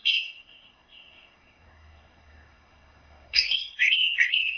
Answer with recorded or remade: remade